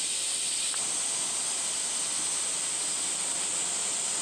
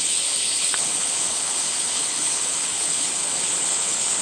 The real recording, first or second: first